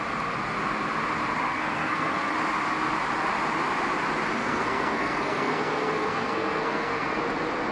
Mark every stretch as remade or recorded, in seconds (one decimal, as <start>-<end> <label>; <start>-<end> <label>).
0.0-1.5 recorded; 1.5-2.3 remade; 2.3-4.4 recorded; 4.4-7.2 remade; 7.2-7.7 recorded